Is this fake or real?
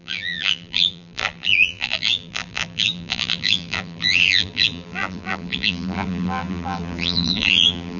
fake